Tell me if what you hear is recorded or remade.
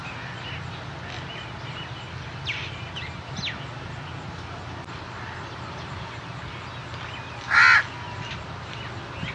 recorded